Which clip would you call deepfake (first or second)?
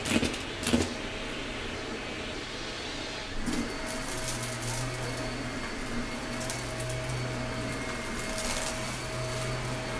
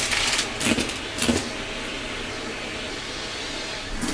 second